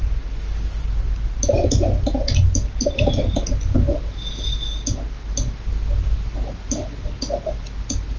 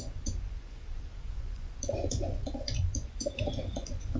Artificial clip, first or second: second